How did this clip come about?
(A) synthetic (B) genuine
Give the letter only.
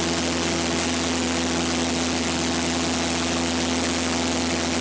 B